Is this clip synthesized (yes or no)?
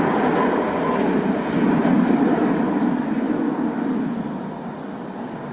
no